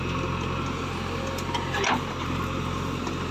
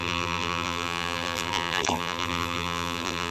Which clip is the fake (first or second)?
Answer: second